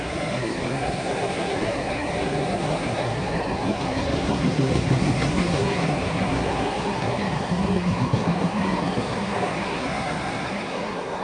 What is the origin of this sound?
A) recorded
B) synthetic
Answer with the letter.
B